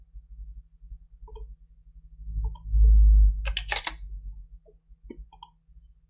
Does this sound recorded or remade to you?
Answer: recorded